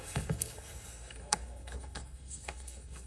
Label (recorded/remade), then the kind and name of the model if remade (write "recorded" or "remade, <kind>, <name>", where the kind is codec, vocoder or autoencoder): remade, codec, SNAC